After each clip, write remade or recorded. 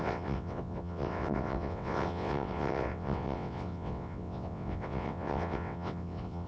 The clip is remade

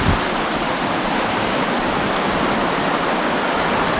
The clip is remade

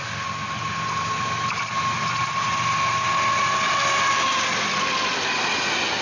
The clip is recorded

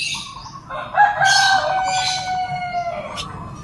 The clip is recorded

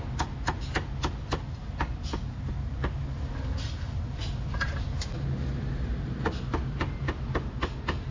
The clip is recorded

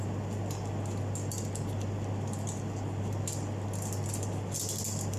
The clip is recorded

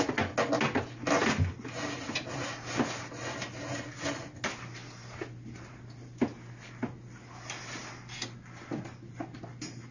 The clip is recorded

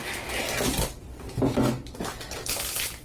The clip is recorded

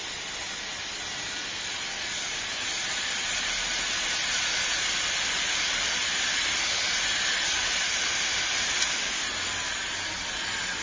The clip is recorded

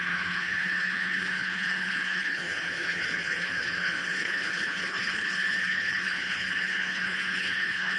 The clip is remade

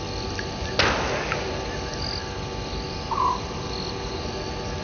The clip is recorded